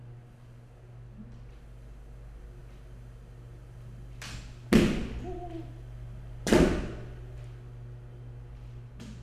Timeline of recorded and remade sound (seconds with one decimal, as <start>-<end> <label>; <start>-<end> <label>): 0.0-9.2 recorded